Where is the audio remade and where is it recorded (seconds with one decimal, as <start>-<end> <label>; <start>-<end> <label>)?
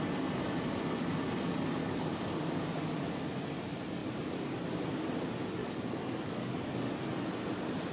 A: 0.0-1.8 recorded; 1.8-2.8 remade; 2.8-5.6 recorded; 5.6-6.9 remade; 6.9-7.9 recorded